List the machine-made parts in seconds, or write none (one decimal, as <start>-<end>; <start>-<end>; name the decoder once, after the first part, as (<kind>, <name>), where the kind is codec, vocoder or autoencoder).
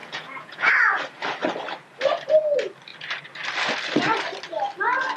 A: 0.0-0.7 (vocoder, Vocos)